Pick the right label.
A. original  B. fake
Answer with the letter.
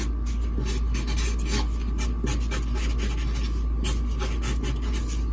A